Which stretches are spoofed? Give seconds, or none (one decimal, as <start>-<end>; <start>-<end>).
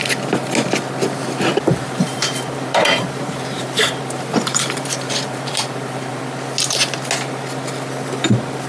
1.2-6.2